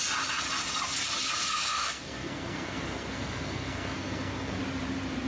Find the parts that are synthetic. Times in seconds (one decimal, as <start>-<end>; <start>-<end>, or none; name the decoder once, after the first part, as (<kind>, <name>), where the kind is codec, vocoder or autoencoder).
1.4-4.6 (codec, SNAC)